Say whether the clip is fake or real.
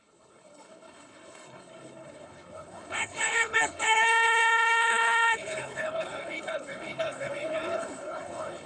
fake